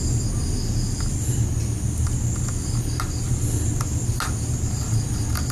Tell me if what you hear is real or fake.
real